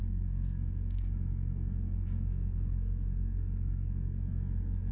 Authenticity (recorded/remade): remade